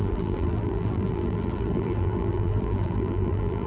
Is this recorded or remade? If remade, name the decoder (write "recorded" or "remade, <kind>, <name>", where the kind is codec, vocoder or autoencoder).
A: remade, vocoder, BigVGAN v2